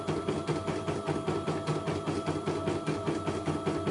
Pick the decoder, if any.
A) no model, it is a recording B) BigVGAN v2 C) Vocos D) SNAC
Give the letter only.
A